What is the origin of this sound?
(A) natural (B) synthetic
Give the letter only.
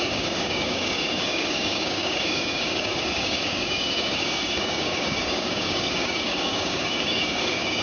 B